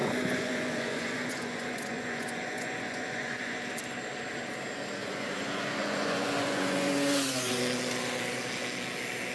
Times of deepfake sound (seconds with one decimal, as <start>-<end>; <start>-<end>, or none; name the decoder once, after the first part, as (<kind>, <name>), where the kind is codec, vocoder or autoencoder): 0.0-3.6 (vocoder, Vocos); 5.0-7.6